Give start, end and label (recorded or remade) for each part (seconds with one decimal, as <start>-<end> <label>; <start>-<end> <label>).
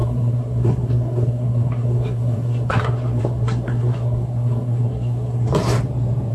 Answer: 0.0-5.5 remade; 5.5-6.3 recorded